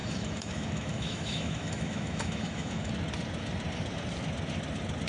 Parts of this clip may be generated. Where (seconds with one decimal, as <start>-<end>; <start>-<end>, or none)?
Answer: 0.0-2.9